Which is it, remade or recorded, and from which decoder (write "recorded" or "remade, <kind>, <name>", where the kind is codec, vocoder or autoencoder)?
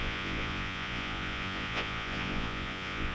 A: remade, vocoder, Vocos